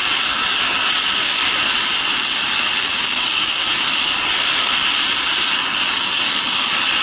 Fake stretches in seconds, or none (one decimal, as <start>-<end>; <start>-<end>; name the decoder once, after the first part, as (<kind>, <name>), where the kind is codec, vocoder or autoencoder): 2.9-3.6 (codec, DAC)